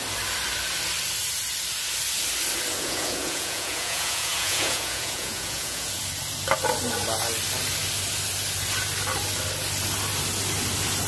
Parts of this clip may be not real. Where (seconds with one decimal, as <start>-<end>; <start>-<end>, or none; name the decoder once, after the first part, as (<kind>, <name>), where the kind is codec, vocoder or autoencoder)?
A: 2.7-6.0 (vocoder, Vocos)